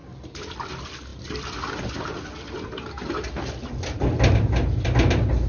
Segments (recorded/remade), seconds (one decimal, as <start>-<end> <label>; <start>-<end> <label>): 0.0-0.7 remade; 0.7-5.5 recorded